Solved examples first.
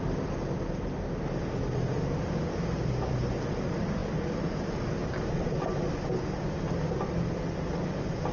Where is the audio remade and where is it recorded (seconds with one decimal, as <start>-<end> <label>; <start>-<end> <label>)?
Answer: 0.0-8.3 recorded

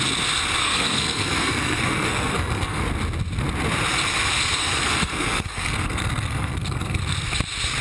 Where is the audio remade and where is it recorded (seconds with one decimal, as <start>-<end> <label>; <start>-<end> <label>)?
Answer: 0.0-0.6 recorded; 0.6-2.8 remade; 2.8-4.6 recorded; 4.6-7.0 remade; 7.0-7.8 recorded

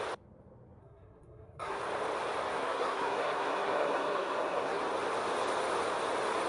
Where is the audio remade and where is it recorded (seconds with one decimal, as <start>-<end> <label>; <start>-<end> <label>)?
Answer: 0.0-0.8 recorded; 0.8-1.8 remade; 1.8-2.5 recorded; 2.5-4.8 remade; 4.8-6.5 recorded